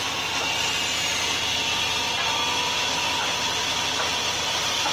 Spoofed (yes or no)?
no